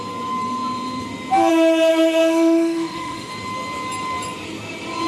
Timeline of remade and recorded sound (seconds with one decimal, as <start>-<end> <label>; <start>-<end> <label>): 0.0-1.9 recorded; 1.9-3.3 remade; 3.3-5.1 recorded

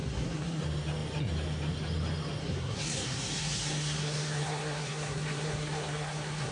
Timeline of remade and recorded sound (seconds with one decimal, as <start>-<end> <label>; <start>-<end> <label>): 0.0-0.6 remade; 0.6-2.4 recorded; 2.4-6.5 remade

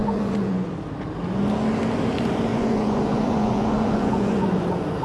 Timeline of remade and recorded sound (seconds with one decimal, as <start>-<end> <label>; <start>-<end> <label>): 0.0-0.7 remade; 0.7-2.5 recorded; 2.5-5.0 remade

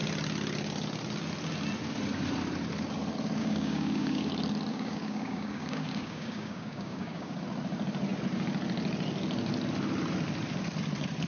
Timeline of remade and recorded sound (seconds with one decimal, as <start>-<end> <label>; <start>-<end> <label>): 0.0-3.4 recorded; 3.4-4.3 remade; 4.3-4.7 recorded; 4.7-7.4 remade; 7.4-11.3 recorded

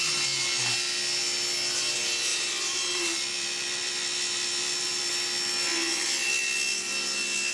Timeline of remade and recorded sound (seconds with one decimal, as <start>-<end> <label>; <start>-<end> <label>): 0.0-2.3 recorded; 2.3-5.1 remade; 5.1-7.5 recorded